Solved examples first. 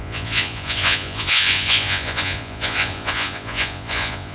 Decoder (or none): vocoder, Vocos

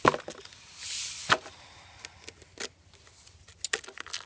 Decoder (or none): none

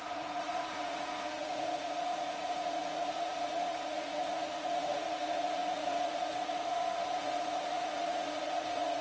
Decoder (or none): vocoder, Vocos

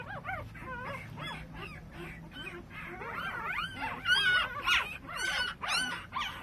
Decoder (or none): none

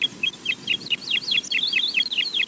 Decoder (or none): none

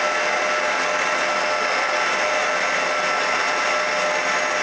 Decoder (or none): none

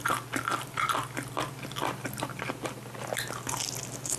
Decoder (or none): none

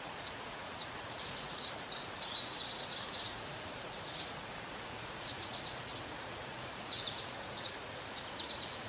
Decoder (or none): vocoder, Vocos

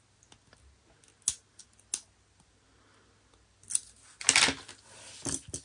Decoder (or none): none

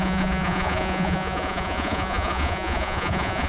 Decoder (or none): vocoder, Vocos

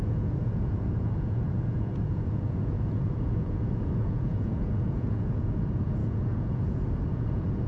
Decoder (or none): vocoder, Vocos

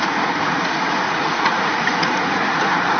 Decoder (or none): vocoder, Vocos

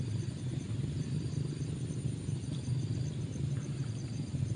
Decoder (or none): none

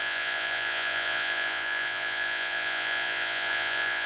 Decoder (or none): vocoder, Vocos